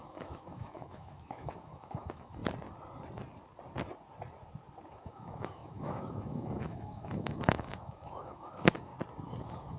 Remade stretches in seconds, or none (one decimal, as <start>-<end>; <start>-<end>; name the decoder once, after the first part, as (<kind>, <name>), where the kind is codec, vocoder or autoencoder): 0.0-2.4 (autoencoder, DAC-VAE); 4.9-8.9; 9.4-9.8